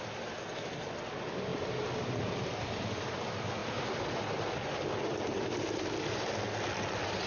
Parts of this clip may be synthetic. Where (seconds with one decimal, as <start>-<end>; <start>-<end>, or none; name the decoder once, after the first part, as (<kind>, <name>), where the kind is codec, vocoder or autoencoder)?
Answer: none